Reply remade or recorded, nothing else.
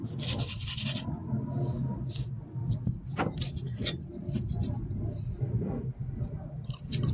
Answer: recorded